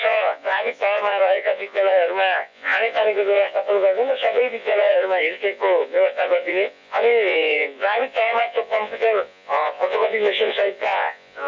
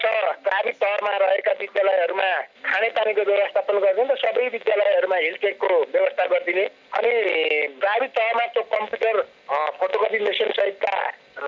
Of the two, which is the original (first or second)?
second